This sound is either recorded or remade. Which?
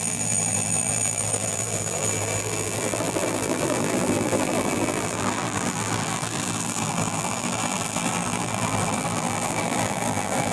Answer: remade